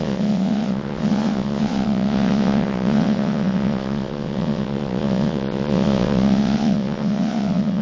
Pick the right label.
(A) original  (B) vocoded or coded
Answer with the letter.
B